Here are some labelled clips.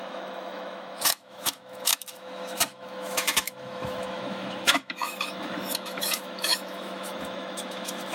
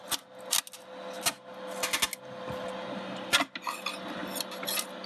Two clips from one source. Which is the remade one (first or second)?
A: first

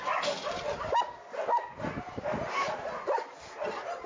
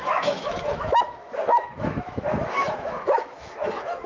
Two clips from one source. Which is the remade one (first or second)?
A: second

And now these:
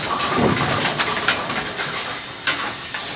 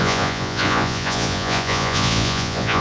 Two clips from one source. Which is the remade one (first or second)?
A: second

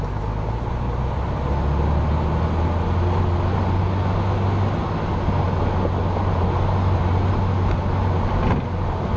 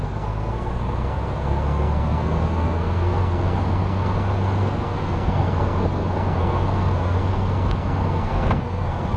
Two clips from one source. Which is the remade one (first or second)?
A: second